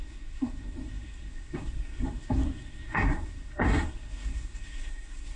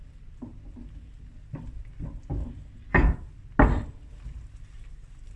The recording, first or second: second